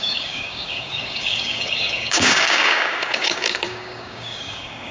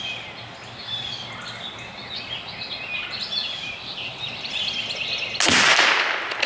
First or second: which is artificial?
first